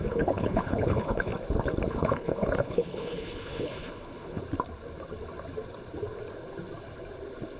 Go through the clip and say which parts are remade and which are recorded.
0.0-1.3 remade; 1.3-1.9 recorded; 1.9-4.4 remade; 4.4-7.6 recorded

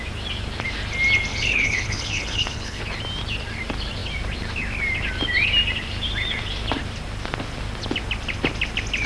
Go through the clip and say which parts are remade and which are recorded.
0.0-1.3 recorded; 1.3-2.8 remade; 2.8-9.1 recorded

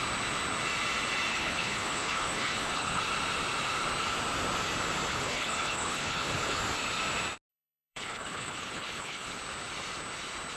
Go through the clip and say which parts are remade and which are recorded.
0.0-1.3 recorded; 1.3-3.0 remade; 3.0-5.1 recorded; 5.1-6.6 remade; 6.6-7.5 recorded; 7.5-9.4 remade; 9.4-10.6 recorded

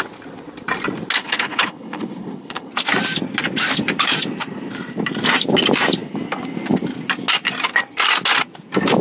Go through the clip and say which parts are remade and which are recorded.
0.0-1.2 recorded; 1.2-2.7 remade; 2.7-9.0 recorded

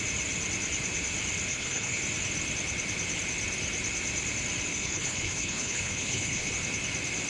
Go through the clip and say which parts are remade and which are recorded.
0.0-1.5 recorded; 1.5-2.0 remade; 2.0-4.7 recorded; 4.7-6.5 remade; 6.5-7.3 recorded